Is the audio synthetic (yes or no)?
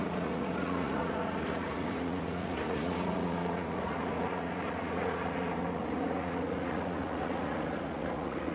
yes